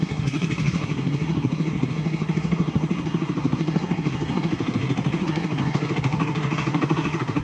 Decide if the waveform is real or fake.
fake